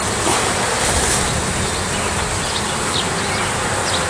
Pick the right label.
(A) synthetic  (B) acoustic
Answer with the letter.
B